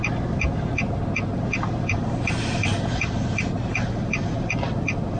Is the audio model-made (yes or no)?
no